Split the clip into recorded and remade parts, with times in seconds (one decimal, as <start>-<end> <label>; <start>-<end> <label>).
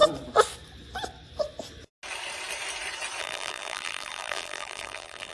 0.0-3.2 recorded; 3.2-5.3 remade